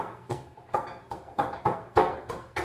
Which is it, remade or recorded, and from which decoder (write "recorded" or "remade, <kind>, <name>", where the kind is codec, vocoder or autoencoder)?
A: remade, codec, SNAC